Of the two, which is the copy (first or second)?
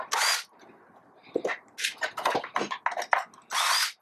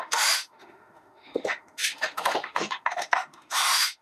second